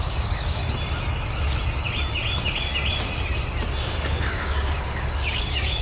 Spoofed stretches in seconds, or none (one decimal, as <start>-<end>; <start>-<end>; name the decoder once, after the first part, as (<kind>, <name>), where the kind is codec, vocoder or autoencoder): 0.0-0.6 (codec, DAC); 4.1-5.8